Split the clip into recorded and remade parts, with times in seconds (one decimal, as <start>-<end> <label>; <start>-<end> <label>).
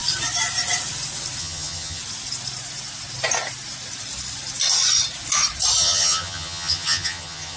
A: 0.0-1.4 recorded; 1.4-2.0 remade; 2.0-5.8 recorded; 5.8-7.6 remade